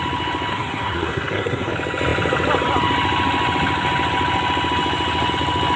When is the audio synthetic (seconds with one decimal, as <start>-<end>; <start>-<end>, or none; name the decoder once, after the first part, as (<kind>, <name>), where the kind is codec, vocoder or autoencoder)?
0.5-1.7 (codec, SNAC)